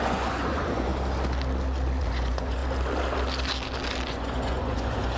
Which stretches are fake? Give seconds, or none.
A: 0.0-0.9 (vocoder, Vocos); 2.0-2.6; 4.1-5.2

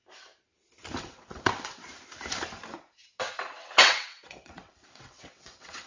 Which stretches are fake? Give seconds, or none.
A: 1.0-1.8 (vocoder, WaveNeXt); 3.2-5.9

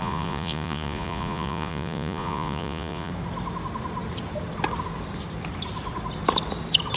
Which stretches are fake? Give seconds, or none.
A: 0.0-3.1 (vocoder, Vocos)

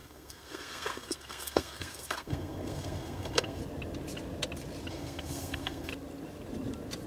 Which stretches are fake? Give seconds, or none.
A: 0.0-3.6 (codec, SNAC); 4.9-5.9

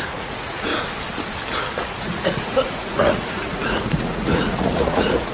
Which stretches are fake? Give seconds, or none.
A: 0.0-0.7 (vocoder, Vocos); 1.9-5.3

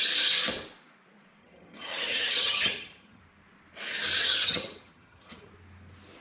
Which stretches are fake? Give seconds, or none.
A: 1.4-3.2 (vocoder, HiFi-GAN); 4.2-5.5

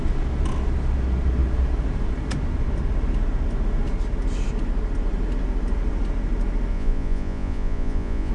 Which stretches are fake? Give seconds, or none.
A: 6.7-8.3 (vocoder, Vocos)

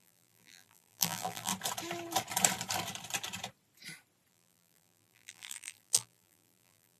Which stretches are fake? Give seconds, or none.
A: 0.0-1.5 (vocoder, BigVGAN v2); 4.3-7.0